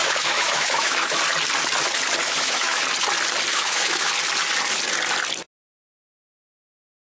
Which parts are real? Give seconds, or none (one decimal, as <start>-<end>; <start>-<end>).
1.2-2.2; 2.8-3.5; 4.1-7.2